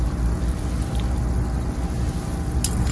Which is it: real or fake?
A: real